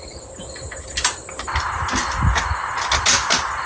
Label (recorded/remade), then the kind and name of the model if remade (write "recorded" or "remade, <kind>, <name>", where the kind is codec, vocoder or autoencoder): recorded